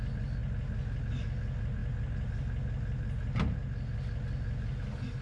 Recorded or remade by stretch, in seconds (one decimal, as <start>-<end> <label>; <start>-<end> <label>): 0.0-5.2 recorded